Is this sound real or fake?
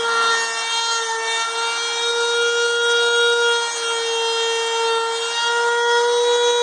real